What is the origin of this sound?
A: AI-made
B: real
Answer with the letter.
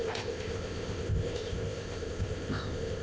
A